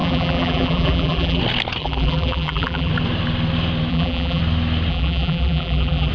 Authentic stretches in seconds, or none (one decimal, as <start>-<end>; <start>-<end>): 1.4-1.8; 2.9-3.9; 4.4-4.9